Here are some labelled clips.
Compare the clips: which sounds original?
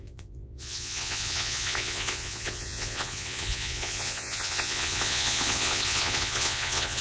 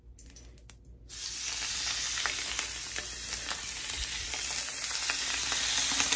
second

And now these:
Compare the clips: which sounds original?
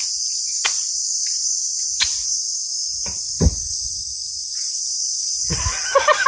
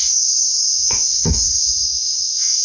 first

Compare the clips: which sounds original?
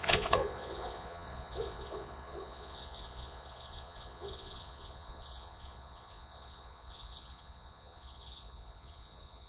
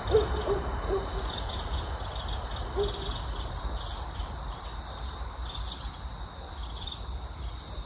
second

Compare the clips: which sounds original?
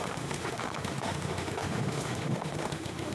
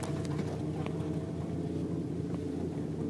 second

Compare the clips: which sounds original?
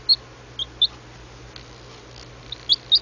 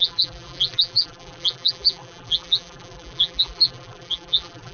first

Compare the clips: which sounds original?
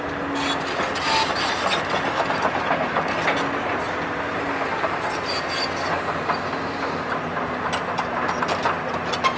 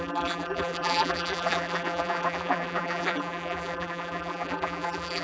first